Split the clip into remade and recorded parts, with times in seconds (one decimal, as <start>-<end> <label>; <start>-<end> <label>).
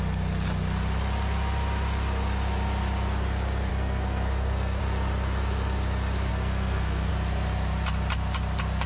0.0-3.7 recorded; 3.7-4.8 remade; 4.8-6.3 recorded; 6.3-7.1 remade; 7.1-8.9 recorded